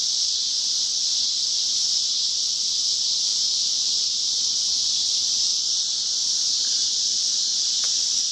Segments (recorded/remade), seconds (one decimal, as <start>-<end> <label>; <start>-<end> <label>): 0.0-1.8 remade; 1.8-2.5 recorded; 2.5-8.3 remade